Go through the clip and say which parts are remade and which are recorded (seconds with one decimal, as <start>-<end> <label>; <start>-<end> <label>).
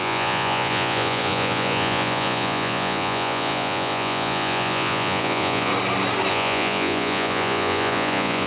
0.0-5.7 remade; 5.7-6.3 recorded; 6.3-8.5 remade